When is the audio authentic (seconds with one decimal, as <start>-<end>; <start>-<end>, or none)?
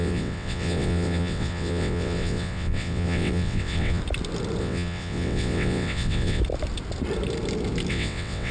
4.0-4.6; 6.4-7.9